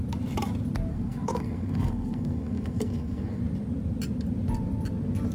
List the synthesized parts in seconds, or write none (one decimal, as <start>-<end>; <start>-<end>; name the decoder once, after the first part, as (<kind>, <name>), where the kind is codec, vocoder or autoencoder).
0.9-3.4 (codec, SNAC)